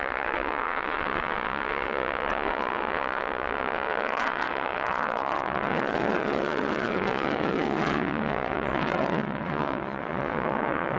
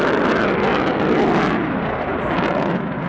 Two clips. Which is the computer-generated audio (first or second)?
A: first